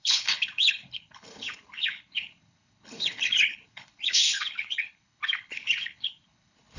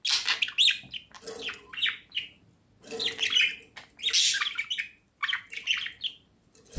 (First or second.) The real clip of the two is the second